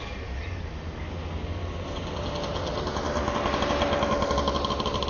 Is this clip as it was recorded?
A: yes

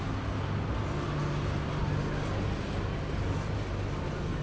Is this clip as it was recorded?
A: yes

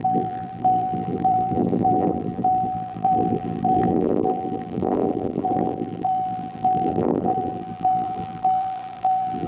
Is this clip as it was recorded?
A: no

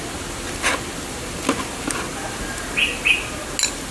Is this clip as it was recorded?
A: yes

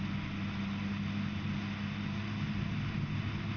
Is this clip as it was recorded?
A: yes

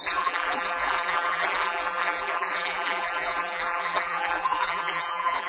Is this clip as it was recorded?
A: no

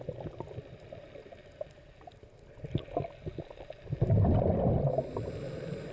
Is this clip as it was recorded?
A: yes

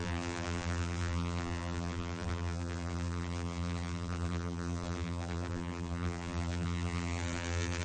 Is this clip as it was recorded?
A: no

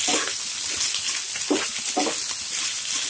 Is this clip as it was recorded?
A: yes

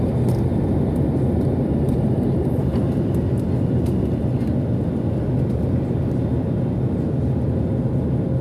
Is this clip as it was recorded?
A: yes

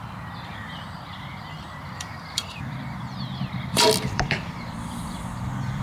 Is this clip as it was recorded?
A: no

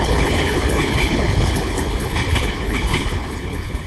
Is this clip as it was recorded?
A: no